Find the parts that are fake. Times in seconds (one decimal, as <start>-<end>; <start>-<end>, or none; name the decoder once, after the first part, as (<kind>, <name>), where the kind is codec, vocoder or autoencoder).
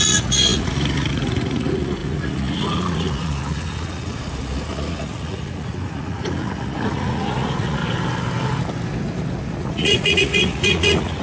0.0-7.8 (vocoder, Vocos); 9.6-11.2